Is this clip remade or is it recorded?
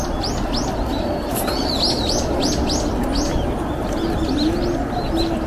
recorded